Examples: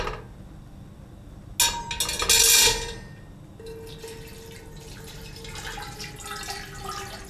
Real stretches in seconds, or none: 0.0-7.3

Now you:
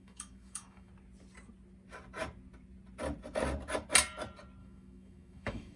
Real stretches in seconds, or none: 0.9-4.6